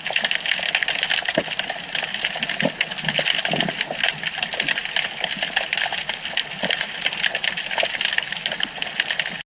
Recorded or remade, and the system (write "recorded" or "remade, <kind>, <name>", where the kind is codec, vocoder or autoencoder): recorded